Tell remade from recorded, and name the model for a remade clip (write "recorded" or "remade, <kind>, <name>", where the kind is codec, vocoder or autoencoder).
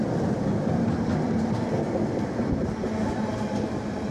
recorded